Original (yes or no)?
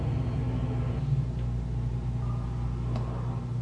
yes